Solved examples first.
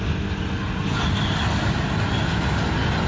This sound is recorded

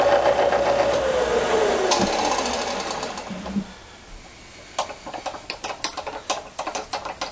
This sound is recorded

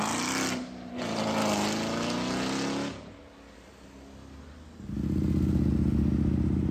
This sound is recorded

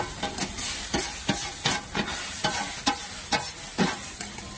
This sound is recorded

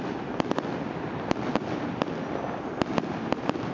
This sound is recorded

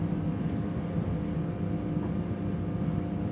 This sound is recorded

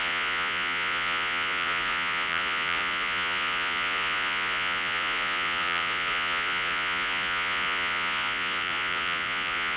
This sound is remade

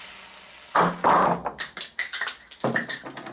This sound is recorded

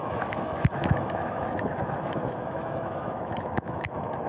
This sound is remade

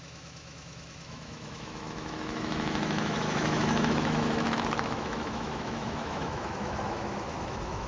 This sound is remade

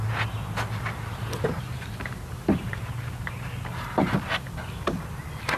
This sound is recorded